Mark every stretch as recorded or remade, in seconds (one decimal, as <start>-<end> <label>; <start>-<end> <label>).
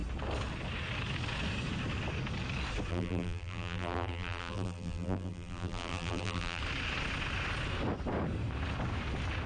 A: 0.0-2.9 recorded; 2.9-6.6 remade; 6.6-9.5 recorded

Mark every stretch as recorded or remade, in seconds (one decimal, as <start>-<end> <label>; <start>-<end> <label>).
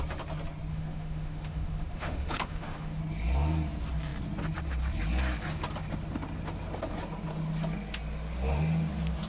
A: 0.0-0.7 recorded; 0.7-3.0 remade; 3.0-9.3 recorded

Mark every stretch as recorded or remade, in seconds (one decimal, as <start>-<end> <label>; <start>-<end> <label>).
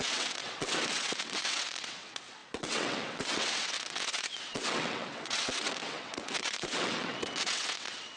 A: 0.0-8.2 remade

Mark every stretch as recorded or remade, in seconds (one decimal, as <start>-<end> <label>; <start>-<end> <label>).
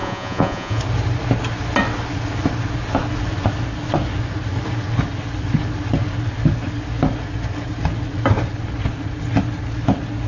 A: 0.0-0.8 remade; 0.8-10.3 recorded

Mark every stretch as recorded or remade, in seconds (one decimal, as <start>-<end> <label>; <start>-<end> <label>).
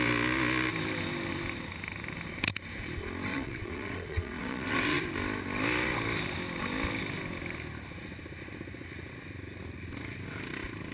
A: 0.0-3.3 recorded; 3.3-5.0 remade; 5.0-10.9 recorded